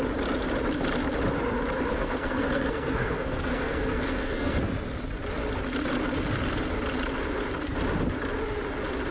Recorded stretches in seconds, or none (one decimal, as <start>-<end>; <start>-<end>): 0.0-1.9; 4.6-9.1